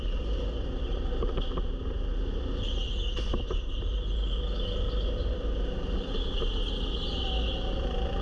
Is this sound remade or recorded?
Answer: recorded